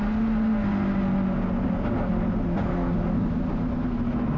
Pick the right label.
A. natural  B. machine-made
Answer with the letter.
A